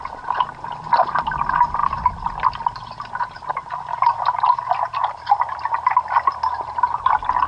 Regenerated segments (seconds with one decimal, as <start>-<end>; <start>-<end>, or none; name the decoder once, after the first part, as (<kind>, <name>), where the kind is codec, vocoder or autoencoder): none